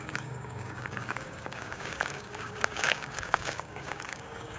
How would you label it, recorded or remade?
remade